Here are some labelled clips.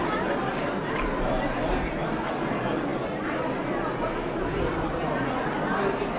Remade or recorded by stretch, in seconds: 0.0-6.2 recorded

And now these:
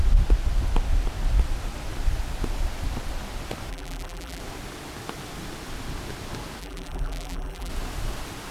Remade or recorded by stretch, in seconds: 0.0-3.7 recorded; 3.7-4.4 remade; 4.4-6.6 recorded; 6.6-7.7 remade; 7.7-8.5 recorded

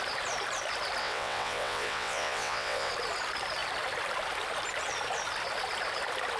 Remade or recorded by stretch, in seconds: 0.0-1.0 recorded; 1.0-2.9 remade; 2.9-6.4 recorded

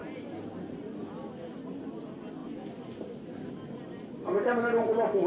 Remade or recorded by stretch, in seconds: 0.0-5.3 recorded

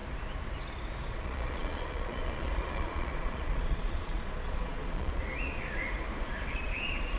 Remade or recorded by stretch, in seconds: 0.0-1.1 recorded; 1.1-5.2 remade; 5.2-6.5 recorded; 6.5-7.2 remade